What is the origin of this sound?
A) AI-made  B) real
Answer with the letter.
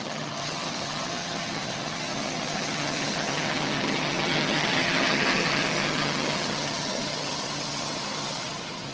A